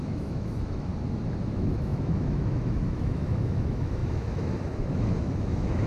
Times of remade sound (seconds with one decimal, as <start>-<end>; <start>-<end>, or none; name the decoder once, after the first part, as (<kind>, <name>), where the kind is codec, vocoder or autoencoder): 0.0-0.9 (autoencoder, DAC-VAE); 1.4-5.9